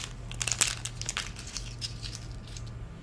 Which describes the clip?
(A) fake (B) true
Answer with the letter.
B